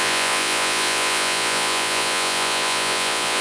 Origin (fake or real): fake